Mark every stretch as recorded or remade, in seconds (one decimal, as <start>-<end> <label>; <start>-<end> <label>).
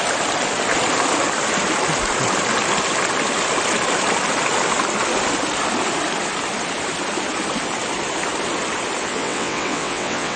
0.0-9.1 recorded; 9.1-10.4 remade